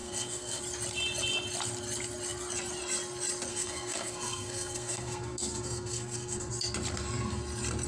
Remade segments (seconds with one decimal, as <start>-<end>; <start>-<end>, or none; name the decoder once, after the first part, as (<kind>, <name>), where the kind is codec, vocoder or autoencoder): 0.0-0.6 (codec, SNAC); 3.5-6.5